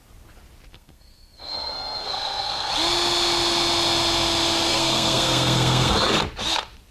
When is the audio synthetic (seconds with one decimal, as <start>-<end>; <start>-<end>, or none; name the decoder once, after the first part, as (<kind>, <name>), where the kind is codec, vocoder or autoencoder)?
0.7-2.7 (codec, SNAC); 4.7-6.0